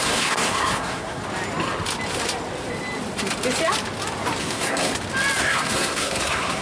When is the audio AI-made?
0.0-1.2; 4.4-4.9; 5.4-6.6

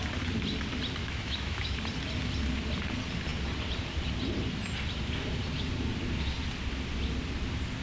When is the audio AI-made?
1.0-1.8

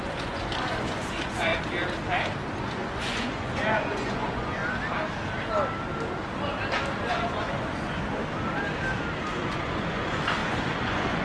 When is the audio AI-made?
0.0-1.5; 2.6-4.6; 7.1-8.1; 9.5-11.2

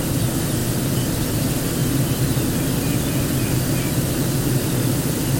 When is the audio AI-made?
none